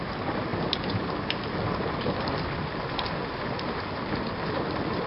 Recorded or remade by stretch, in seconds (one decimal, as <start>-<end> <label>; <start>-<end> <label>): 0.0-5.1 recorded